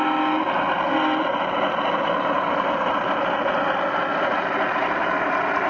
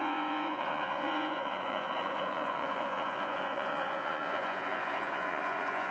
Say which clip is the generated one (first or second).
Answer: second